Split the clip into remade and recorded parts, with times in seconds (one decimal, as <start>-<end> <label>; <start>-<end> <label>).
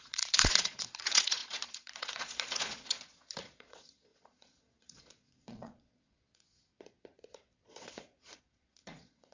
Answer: 0.0-9.3 remade